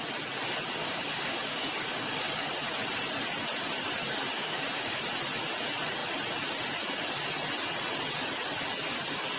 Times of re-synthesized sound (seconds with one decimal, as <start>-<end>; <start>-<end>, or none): 0.8-2.5; 4.0-5.0